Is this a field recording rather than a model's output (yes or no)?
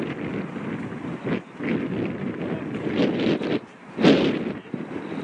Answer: yes